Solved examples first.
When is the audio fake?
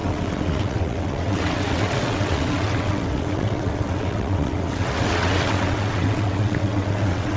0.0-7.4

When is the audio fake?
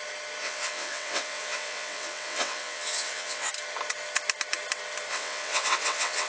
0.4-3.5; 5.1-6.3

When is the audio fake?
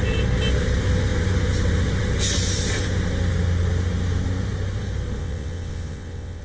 5.2-6.4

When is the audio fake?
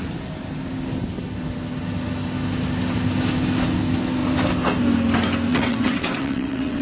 5.5-6.8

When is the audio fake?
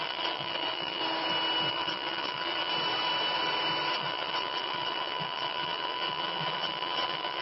0.0-1.0; 1.7-2.7; 3.9-7.4